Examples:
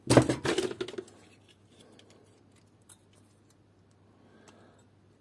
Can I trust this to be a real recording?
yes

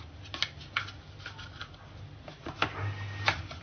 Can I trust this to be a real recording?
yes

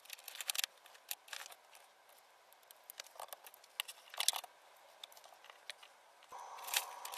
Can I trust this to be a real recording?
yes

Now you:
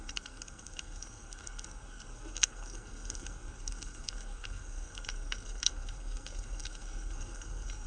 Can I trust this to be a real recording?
no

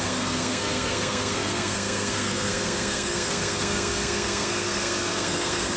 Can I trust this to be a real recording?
no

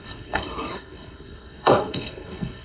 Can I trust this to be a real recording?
no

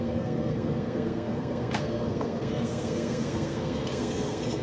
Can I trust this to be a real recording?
no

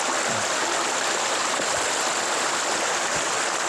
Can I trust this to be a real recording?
yes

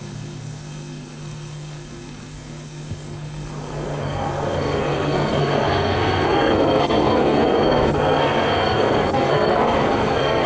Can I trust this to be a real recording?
no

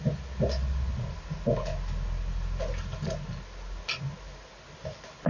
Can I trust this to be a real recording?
yes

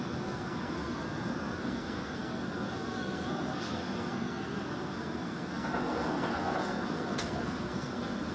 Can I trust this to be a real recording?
no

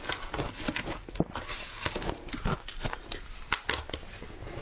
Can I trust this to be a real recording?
yes